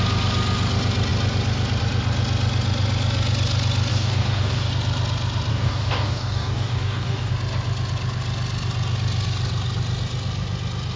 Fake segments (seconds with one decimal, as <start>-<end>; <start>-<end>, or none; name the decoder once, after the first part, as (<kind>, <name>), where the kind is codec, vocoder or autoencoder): 3.9-4.7 (codec, DAC); 5.5-7.3